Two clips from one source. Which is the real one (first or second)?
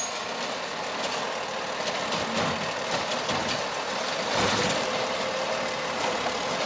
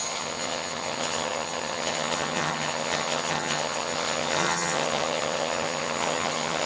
first